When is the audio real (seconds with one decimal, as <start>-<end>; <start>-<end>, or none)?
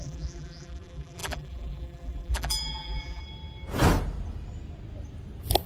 3.2-5.7